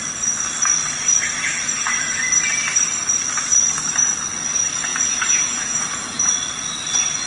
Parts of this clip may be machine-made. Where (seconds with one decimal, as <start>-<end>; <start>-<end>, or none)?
4.9-6.3